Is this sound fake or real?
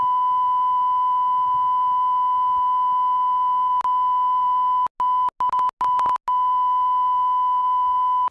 real